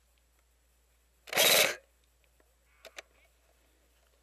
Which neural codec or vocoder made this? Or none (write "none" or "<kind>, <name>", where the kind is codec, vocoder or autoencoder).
none